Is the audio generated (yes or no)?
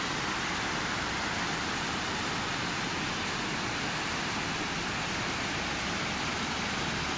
no